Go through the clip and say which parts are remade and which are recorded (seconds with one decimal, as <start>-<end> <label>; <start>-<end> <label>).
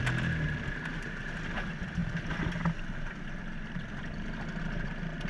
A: 0.0-5.3 recorded